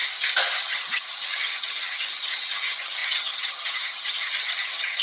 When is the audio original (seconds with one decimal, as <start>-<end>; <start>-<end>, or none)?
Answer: 0.0-0.6